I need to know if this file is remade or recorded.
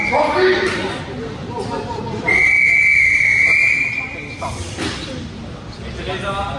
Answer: recorded